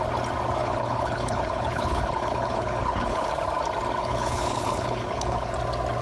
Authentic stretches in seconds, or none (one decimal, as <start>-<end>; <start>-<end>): 0.0-0.6; 3.3-4.0; 5.5-6.0